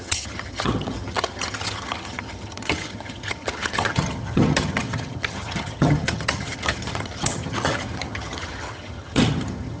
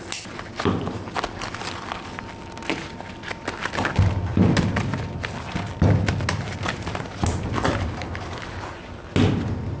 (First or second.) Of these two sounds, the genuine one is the second